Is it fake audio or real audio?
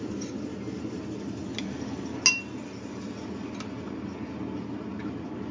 real